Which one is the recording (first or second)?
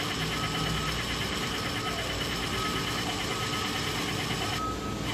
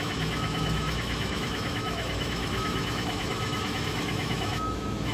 first